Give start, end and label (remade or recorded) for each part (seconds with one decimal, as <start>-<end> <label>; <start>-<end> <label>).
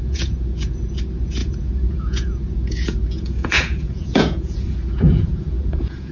0.0-6.1 remade